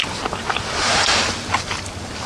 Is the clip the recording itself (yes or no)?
yes